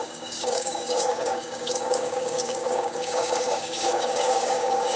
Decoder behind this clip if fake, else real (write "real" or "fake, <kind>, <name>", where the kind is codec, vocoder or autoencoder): fake, codec, DAC